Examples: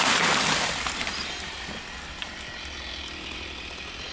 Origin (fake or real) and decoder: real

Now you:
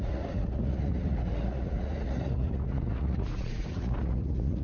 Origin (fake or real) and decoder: fake, vocoder, Vocos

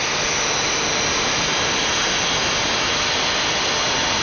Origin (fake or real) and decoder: real